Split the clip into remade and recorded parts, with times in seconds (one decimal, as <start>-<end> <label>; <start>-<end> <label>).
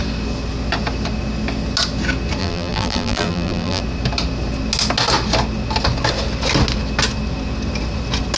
0.0-2.4 recorded; 2.4-3.8 remade; 3.8-8.4 recorded